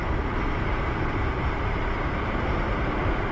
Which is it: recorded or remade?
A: remade